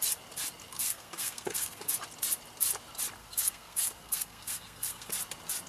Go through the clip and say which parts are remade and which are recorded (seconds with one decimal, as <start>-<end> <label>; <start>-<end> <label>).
0.0-0.7 recorded; 0.7-1.9 remade; 1.9-3.2 recorded; 3.2-5.1 remade; 5.1-5.7 recorded